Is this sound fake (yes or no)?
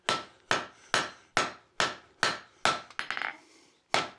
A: no